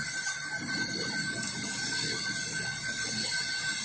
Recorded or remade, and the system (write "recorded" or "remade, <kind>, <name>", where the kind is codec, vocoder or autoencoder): recorded